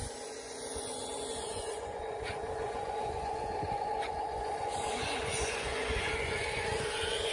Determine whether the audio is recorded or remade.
remade